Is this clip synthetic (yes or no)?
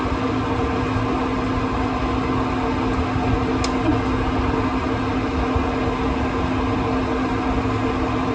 no